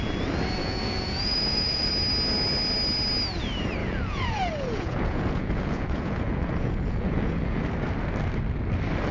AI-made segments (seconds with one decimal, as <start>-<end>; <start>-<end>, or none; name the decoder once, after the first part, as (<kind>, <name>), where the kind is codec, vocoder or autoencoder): 0.6-1.9 (vocoder, Vocos); 3.8-7.6